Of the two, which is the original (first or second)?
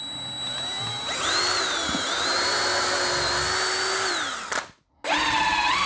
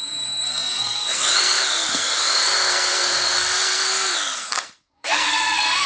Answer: first